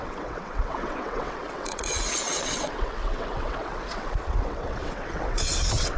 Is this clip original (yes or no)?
no